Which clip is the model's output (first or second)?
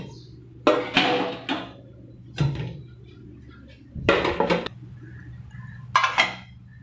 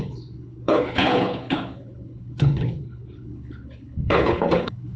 second